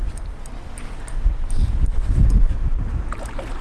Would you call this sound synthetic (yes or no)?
no